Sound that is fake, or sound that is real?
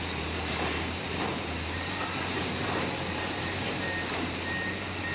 fake